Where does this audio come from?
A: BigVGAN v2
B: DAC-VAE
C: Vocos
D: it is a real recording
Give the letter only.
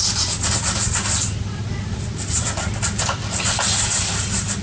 D